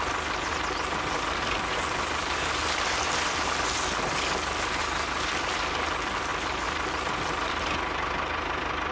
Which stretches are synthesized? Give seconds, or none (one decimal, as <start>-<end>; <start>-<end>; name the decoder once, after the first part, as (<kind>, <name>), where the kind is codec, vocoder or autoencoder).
none